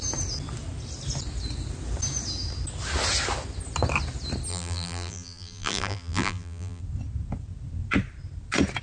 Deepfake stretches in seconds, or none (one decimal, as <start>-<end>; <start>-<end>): 4.5-6.8